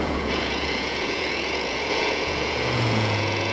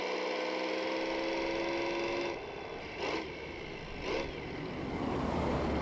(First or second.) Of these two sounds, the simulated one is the first